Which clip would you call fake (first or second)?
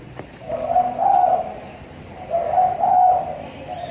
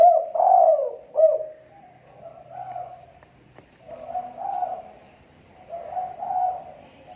second